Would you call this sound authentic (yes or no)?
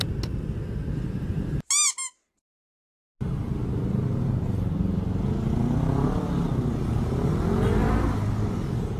yes